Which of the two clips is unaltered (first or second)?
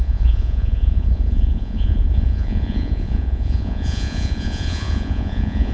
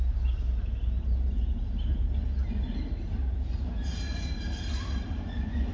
second